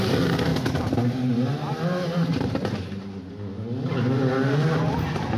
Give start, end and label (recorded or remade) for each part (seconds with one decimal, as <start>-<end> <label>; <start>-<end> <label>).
0.0-0.5 recorded; 0.5-2.9 remade; 2.9-5.4 recorded